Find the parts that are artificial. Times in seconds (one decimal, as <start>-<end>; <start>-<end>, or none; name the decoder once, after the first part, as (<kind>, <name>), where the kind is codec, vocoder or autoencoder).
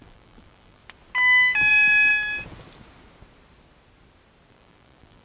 0.0-0.8 (vocoder, BigVGAN v2); 1.7-2.1; 4.5-5.2